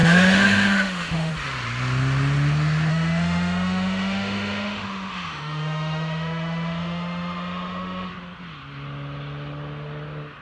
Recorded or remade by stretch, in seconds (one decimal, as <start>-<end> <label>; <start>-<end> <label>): 0.0-1.3 remade; 1.3-2.9 recorded; 2.9-8.1 remade; 8.1-10.4 recorded